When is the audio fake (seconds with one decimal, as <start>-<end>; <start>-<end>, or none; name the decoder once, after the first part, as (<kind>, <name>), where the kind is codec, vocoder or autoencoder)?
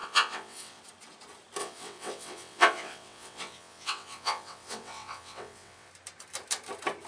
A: 0.0-0.8 (vocoder, WaveNeXt); 1.6-5.9